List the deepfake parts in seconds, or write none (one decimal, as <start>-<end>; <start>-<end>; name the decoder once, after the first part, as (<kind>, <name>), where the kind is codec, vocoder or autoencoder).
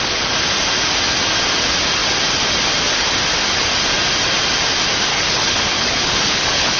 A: 5.1-6.8 (codec, HILCodec)